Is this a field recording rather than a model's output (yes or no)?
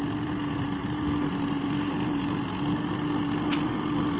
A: yes